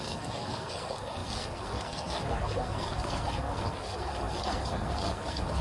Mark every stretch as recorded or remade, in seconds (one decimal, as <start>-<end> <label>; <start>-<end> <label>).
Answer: 0.0-5.6 remade